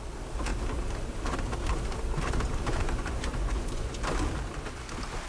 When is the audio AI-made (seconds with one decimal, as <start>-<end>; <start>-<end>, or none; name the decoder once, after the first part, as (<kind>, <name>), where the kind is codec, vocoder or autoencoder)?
2.7-4.0 (vocoder, Vocos)